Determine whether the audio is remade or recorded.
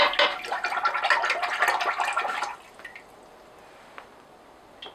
recorded